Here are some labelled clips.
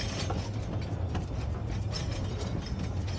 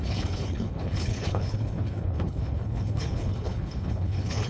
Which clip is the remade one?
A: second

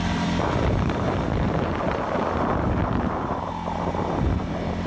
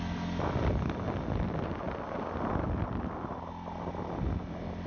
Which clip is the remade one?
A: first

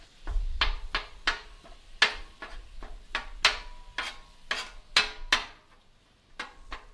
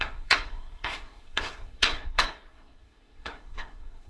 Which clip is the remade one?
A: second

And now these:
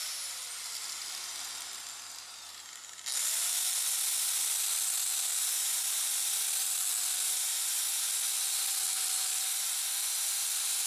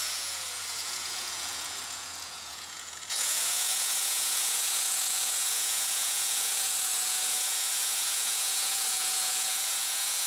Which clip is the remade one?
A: second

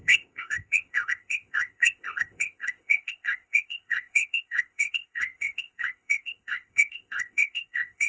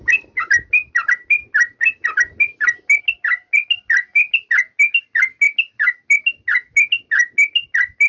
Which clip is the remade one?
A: first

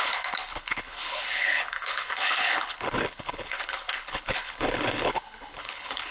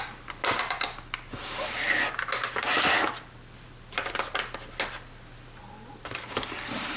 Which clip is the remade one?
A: first